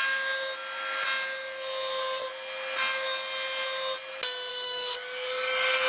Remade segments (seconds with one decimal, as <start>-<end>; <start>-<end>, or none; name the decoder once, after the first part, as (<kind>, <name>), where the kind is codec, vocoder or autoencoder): 4.5-5.9 (codec, DAC)